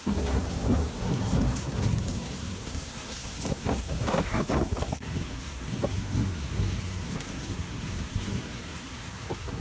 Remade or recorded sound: remade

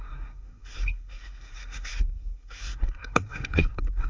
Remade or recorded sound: remade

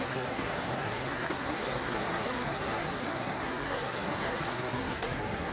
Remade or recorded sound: remade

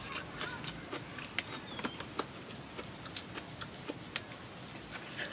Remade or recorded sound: recorded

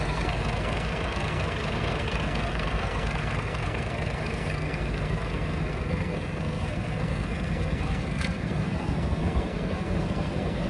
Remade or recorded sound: remade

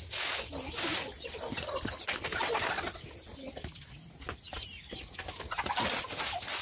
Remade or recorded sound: recorded